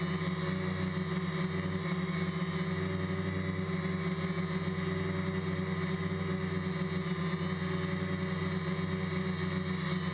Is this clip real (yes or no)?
yes